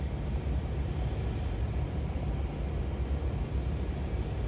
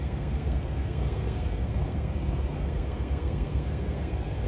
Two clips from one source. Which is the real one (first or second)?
first